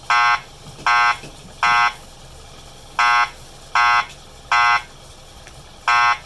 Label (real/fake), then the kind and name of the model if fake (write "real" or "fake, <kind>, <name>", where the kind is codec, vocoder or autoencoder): real